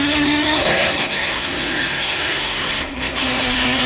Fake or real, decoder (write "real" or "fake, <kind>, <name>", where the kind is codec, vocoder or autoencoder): fake, codec, SNAC